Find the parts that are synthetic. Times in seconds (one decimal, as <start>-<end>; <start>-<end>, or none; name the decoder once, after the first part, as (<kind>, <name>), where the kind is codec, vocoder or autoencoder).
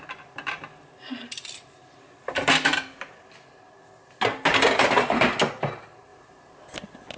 none